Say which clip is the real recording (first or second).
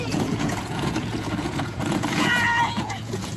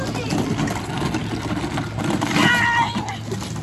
second